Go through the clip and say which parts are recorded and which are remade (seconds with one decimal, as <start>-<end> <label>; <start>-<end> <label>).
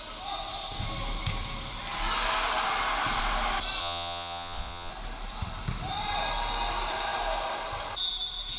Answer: 0.0-3.8 recorded; 3.8-4.9 remade; 4.9-8.6 recorded